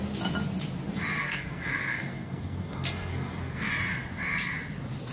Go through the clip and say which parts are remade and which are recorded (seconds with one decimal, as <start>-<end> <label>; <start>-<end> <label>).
0.0-1.2 recorded; 1.2-3.7 remade; 3.7-5.1 recorded